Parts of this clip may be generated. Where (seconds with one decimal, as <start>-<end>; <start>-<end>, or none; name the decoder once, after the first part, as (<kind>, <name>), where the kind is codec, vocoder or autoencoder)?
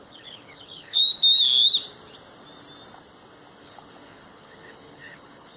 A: 0.0-1.0 (codec, HILCodec); 3.6-5.6